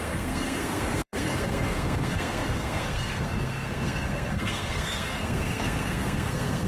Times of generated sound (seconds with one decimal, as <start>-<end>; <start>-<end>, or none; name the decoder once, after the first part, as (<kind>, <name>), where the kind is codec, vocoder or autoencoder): 0.0-6.7 (codec, SNAC)

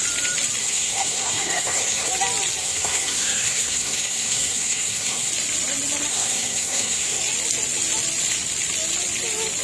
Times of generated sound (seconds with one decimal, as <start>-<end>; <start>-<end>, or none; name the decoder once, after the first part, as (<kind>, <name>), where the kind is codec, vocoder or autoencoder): 0.6-2.1 (codec, SNAC); 2.6-5.3; 6.1-7.2